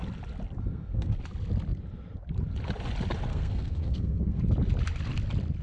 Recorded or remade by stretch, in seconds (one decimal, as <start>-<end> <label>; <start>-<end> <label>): 0.0-0.7 recorded; 0.7-1.2 remade; 1.2-3.3 recorded; 3.3-4.4 remade; 4.4-5.6 recorded